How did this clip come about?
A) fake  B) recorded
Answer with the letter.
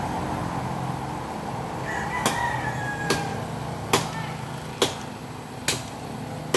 B